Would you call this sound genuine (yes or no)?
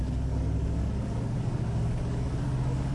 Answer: no